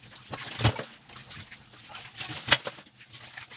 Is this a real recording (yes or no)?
yes